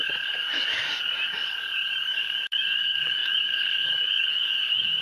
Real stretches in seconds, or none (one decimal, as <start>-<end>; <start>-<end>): none